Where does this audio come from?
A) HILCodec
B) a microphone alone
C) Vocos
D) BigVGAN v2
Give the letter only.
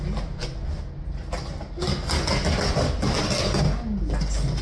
B